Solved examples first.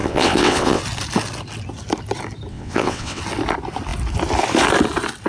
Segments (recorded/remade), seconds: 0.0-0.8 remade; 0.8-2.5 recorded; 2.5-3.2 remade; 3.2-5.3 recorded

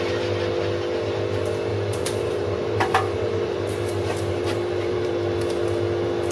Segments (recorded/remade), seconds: 0.0-1.7 recorded; 1.7-5.1 remade; 5.1-6.3 recorded

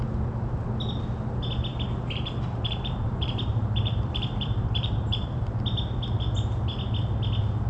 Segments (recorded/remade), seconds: 0.0-1.7 recorded; 1.7-5.6 remade; 5.6-7.7 recorded

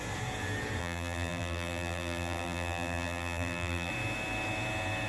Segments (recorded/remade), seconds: 0.0-0.8 recorded; 0.8-3.9 remade; 3.9-5.1 recorded

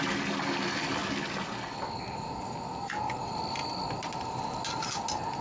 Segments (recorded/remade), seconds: 0.0-5.4 recorded